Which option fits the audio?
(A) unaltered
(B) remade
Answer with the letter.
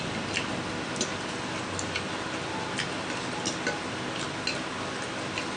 A